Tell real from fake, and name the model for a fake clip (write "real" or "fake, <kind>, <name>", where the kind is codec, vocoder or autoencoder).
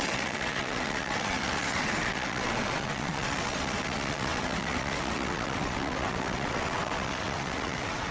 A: fake, vocoder, WaveNeXt